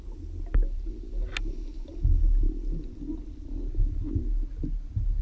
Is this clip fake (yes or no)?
no